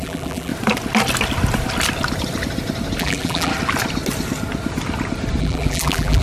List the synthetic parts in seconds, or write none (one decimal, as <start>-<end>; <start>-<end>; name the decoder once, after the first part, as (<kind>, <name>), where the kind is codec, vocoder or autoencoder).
0.0-0.5 (vocoder, BigVGAN v2); 3.0-3.5; 5.4-6.2